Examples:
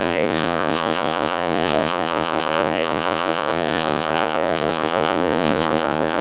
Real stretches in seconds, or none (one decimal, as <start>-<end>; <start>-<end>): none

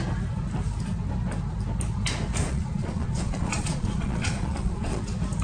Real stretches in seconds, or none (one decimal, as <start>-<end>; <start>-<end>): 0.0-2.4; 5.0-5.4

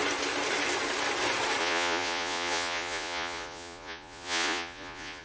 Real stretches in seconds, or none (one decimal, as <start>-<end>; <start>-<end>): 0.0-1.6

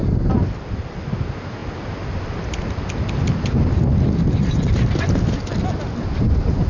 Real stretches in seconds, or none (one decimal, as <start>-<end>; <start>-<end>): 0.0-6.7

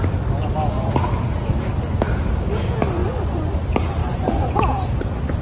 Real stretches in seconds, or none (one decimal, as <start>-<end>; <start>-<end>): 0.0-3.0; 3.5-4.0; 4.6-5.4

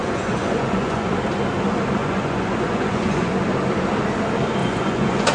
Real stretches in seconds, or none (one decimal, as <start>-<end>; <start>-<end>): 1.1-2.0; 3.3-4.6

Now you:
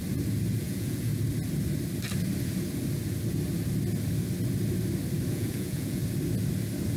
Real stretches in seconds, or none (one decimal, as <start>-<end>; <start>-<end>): 0.0-0.6; 1.1-5.3; 6.0-7.0